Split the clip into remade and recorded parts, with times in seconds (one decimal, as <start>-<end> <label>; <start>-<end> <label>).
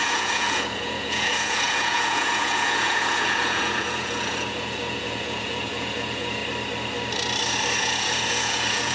0.0-6.4 remade; 6.4-7.8 recorded; 7.8-8.9 remade